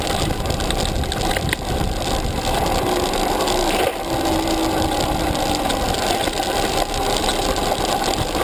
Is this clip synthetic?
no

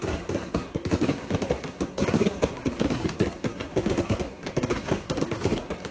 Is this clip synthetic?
yes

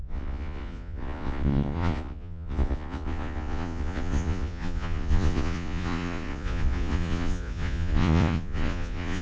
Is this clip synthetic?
yes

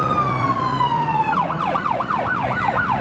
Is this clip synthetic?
yes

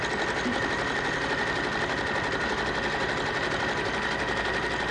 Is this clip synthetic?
no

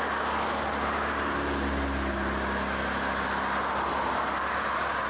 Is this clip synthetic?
no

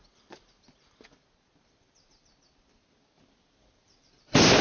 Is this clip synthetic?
no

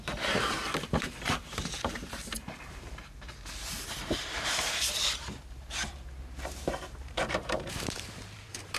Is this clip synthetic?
yes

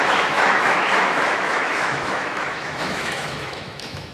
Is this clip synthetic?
yes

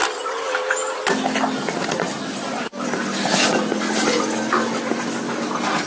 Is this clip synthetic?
no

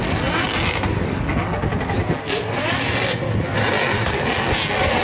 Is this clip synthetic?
no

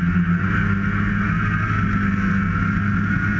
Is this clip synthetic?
no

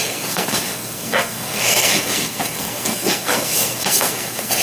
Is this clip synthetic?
yes